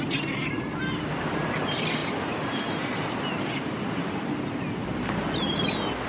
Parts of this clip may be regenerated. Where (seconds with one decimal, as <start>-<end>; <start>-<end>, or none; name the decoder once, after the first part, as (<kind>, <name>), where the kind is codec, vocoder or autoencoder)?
none